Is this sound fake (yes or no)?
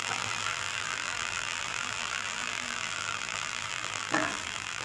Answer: yes